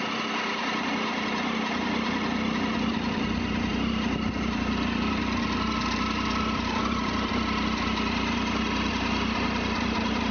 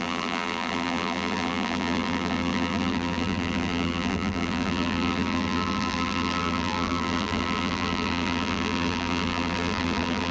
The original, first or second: first